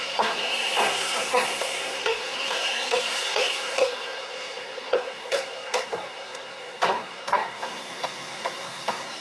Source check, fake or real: fake